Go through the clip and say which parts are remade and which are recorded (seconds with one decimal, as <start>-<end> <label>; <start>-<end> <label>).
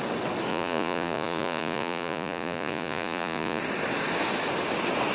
0.0-0.5 recorded; 0.5-3.6 remade; 3.6-5.1 recorded